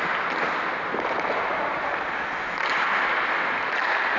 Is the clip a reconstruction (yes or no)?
no